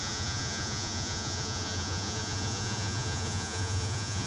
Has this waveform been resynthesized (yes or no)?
yes